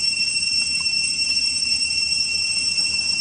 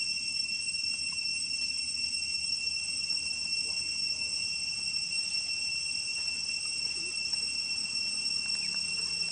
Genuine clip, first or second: second